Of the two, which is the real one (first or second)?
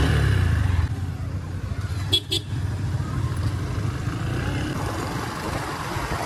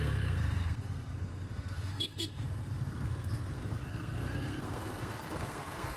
first